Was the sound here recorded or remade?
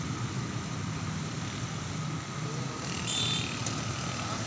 recorded